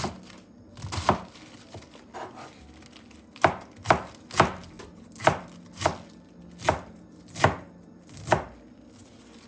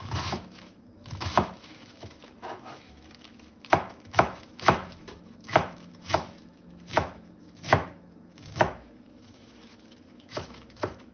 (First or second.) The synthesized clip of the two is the second